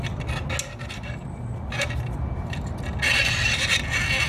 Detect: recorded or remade recorded